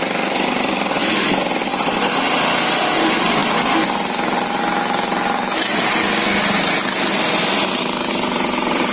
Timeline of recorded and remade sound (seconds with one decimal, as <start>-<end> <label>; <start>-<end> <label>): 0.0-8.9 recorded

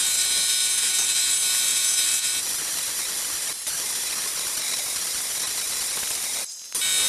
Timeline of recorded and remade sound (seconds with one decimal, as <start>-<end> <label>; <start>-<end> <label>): 0.0-7.1 recorded

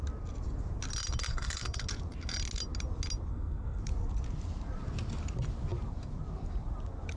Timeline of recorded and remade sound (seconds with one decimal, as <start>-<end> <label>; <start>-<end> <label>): 0.0-1.3 recorded; 1.3-1.8 remade; 1.8-3.3 recorded; 3.3-3.8 remade; 3.8-7.2 recorded

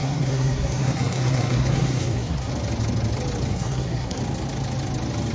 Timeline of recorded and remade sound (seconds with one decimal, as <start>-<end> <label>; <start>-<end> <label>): 0.0-2.5 remade; 2.5-3.5 recorded; 3.5-4.2 remade; 4.2-5.3 recorded